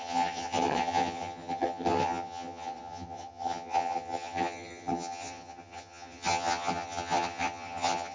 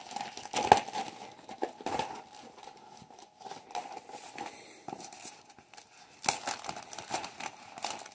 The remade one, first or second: first